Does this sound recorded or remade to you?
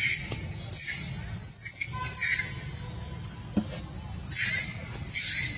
recorded